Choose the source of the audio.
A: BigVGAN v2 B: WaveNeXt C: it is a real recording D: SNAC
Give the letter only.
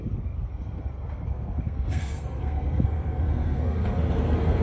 D